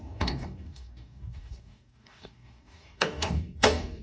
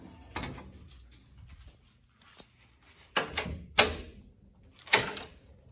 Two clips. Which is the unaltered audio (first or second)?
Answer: second